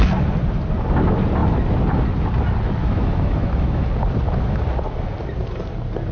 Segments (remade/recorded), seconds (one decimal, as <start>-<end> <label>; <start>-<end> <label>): 0.0-2.8 recorded; 2.8-3.9 remade; 3.9-6.1 recorded